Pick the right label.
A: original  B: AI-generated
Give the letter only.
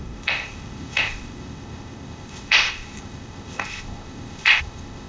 B